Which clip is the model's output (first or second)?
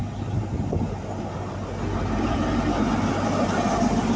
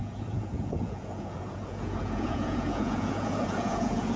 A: second